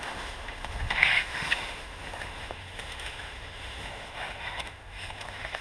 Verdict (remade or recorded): remade